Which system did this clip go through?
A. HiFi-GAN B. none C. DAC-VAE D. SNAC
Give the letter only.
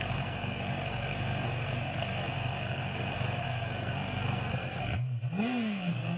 D